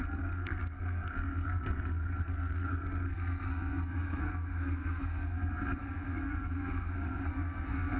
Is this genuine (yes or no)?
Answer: no